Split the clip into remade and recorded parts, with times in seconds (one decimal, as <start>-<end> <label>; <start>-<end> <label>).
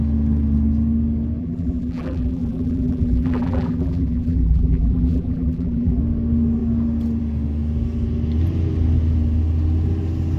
0.0-1.4 recorded; 1.4-6.0 remade; 6.0-10.4 recorded